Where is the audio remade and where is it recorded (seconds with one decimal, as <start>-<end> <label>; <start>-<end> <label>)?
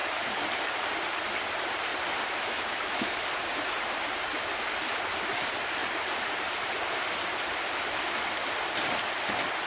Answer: 0.0-0.6 remade; 0.6-1.9 recorded; 1.9-4.1 remade; 4.1-5.8 recorded; 5.8-7.0 remade; 7.0-9.7 recorded